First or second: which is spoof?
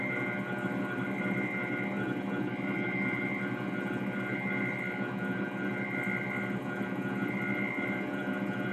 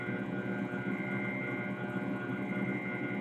first